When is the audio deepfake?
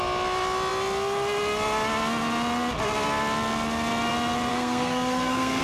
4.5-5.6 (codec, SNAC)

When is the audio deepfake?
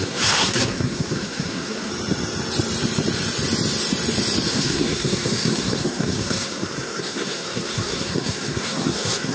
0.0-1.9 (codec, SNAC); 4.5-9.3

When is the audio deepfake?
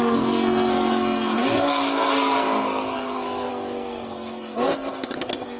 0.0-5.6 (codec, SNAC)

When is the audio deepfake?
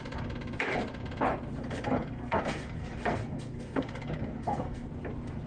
1.6-4.9 (codec, SNAC)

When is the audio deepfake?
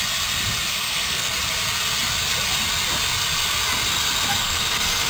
0.7-1.3 (codec, SNAC); 4.4-5.1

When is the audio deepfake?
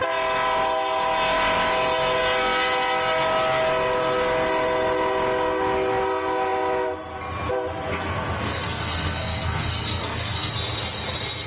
7.9-10.5 (codec, SNAC)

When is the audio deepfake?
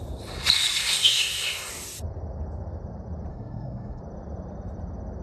0.8-1.7 (codec, SNAC); 3.3-4.0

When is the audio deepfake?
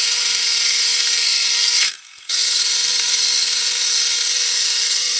0.0-5.2 (codec, SNAC)